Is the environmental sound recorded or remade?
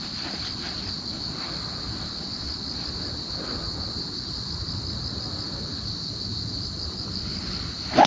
remade